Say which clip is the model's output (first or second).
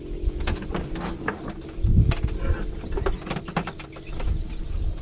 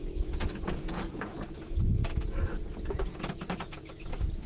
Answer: second